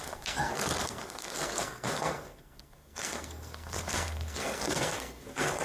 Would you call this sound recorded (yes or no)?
no